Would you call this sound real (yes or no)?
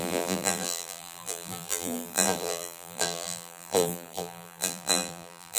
no